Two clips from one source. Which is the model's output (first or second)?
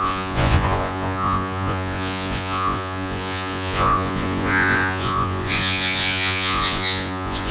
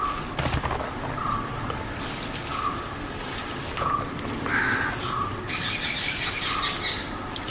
first